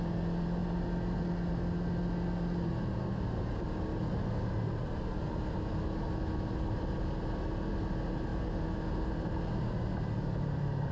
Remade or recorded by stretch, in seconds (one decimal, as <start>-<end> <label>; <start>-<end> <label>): 0.0-10.9 recorded

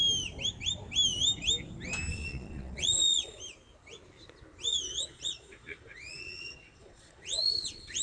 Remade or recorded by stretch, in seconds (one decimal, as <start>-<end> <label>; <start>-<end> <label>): 0.0-2.1 recorded; 2.1-3.4 remade; 3.4-4.7 recorded; 4.7-8.0 remade

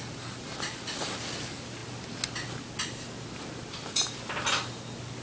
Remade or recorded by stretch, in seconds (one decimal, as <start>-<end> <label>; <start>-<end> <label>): 0.0-5.2 recorded

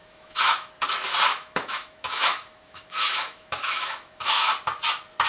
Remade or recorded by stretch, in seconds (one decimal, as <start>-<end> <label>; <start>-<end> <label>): 0.0-0.7 remade; 0.7-1.3 recorded; 1.3-4.5 remade; 4.5-5.3 recorded

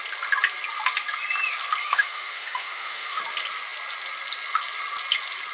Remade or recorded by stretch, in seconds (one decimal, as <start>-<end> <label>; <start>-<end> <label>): 0.0-1.8 recorded; 1.8-3.2 remade; 3.2-5.5 recorded

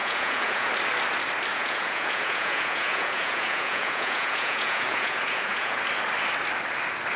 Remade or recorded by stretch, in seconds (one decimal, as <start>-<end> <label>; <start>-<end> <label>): 0.0-0.7 remade; 0.7-1.5 recorded; 1.5-5.8 remade; 5.8-7.2 recorded

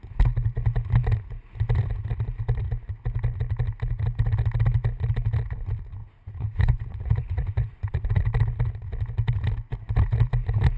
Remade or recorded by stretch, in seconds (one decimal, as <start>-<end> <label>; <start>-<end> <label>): 0.0-6.0 recorded; 6.0-8.2 remade; 8.2-10.8 recorded